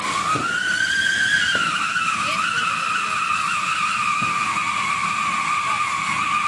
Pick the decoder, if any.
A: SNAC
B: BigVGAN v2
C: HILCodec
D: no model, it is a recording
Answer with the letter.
D